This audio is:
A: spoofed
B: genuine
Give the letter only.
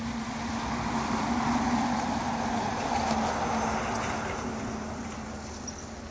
B